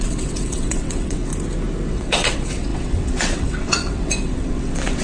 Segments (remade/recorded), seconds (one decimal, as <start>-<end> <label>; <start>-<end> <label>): 0.0-1.3 remade; 1.3-1.9 recorded; 1.9-5.0 remade